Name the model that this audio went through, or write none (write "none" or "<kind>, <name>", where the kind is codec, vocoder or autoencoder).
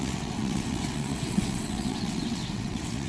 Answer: vocoder, WaveNeXt